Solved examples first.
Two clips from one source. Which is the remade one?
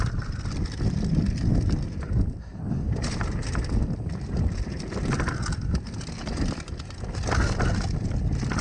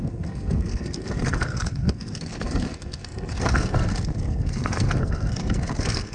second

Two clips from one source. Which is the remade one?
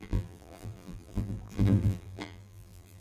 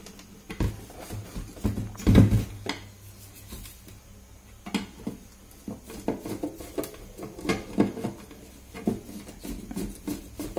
first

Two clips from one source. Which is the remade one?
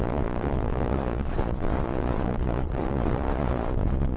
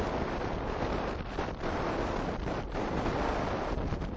first